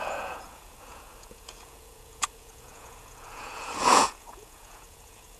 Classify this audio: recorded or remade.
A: remade